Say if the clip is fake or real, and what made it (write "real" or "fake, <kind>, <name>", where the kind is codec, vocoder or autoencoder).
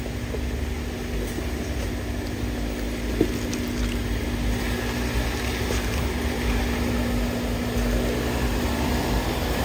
real